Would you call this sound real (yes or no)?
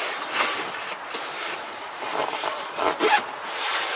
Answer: yes